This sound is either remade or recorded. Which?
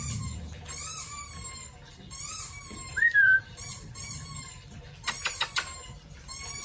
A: remade